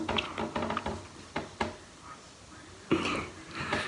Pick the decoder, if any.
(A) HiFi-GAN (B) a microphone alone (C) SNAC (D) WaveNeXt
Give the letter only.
B